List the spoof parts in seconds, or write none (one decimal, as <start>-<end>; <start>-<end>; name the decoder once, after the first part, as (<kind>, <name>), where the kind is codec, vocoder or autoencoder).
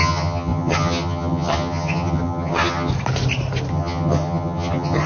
0.0-2.9 (vocoder, HiFi-GAN); 3.7-5.1